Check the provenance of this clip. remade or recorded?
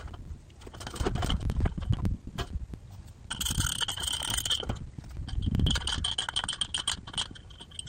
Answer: recorded